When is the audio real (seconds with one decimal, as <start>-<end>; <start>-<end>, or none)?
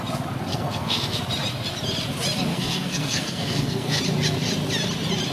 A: 0.0-0.5; 1.2-2.5; 4.0-5.3